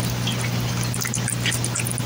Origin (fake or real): real